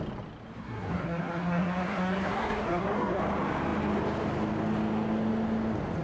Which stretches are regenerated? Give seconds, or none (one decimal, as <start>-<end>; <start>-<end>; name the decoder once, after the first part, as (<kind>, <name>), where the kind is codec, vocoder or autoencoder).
0.6-3.2 (codec, SNAC)